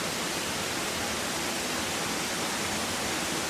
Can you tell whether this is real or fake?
real